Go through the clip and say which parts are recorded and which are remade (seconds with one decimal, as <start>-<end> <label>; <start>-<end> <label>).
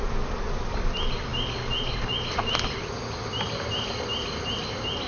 0.0-5.1 recorded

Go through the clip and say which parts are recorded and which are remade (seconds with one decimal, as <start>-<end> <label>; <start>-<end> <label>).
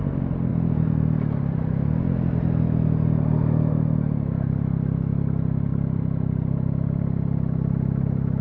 0.0-8.4 recorded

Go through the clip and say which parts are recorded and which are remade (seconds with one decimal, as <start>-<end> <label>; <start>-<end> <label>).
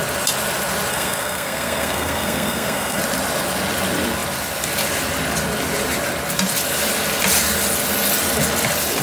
0.0-0.9 recorded; 0.9-3.0 remade; 3.0-9.0 recorded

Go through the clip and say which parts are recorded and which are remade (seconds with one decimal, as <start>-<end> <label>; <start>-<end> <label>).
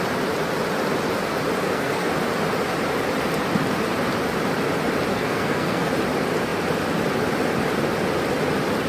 0.0-1.6 recorded; 1.6-2.1 remade; 2.1-5.1 recorded; 5.1-5.9 remade; 5.9-8.9 recorded